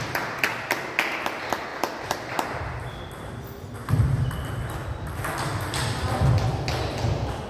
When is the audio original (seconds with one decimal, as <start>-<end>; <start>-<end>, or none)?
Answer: 0.0-1.7; 3.1-7.5